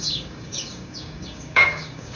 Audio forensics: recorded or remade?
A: remade